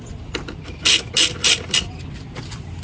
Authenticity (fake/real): real